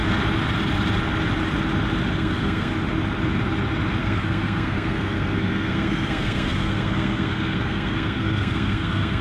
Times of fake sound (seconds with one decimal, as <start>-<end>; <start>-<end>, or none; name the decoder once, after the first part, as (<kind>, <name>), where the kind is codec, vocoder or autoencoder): 2.1-2.7 (codec, SNAC); 4.0-9.2